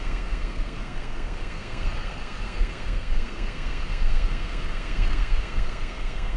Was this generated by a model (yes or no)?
yes